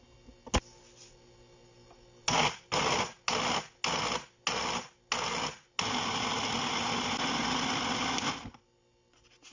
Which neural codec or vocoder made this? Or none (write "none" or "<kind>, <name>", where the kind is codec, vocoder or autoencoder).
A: none